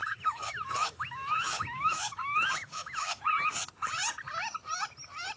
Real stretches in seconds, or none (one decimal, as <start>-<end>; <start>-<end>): 3.2-5.4